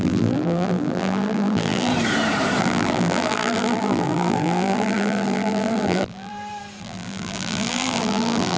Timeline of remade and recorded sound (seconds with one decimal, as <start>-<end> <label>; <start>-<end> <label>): 0.0-1.9 remade; 1.9-2.6 recorded; 2.6-6.3 remade; 6.3-6.8 recorded; 6.8-8.6 remade